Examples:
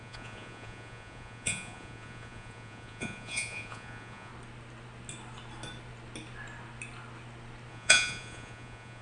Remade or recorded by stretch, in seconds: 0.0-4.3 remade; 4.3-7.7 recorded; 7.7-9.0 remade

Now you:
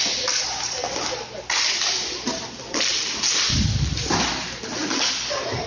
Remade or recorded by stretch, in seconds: 0.0-5.7 recorded

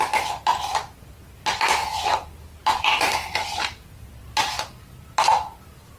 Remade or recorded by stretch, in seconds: 0.0-2.6 recorded; 2.6-4.1 remade; 4.1-6.0 recorded

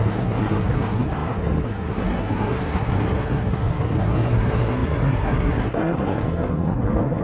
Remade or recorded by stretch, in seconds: 0.0-7.2 remade